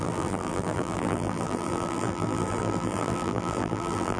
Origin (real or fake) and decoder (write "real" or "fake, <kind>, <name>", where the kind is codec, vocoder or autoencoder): fake, vocoder, BigVGAN v2